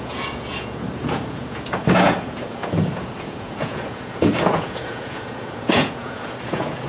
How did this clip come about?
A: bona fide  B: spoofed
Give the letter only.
B